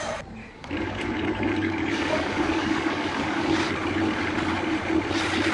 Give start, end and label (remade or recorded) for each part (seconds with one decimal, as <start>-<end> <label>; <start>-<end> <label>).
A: 0.0-0.4 recorded; 0.4-3.7 remade; 3.7-5.5 recorded